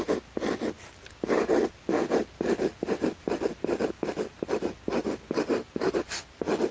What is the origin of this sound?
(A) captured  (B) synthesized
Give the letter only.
B